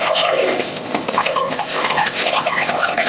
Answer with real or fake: fake